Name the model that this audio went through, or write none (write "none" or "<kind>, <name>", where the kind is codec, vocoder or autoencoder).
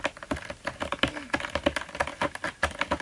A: none